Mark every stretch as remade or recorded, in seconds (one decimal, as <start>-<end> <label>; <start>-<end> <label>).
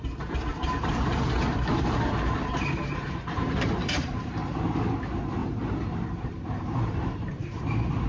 0.0-0.5 recorded; 0.5-4.6 remade; 4.6-5.4 recorded; 5.4-8.1 remade